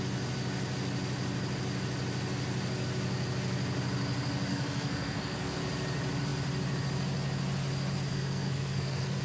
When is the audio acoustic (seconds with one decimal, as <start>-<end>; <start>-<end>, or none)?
0.0-4.5; 5.6-8.1